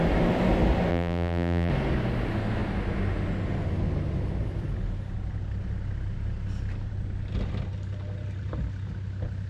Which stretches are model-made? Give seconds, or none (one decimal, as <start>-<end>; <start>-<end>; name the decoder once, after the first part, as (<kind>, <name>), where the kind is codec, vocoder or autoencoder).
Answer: 0.9-1.7 (vocoder, BigVGAN v2)